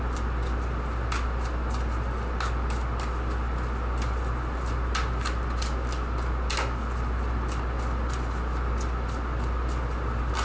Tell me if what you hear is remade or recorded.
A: recorded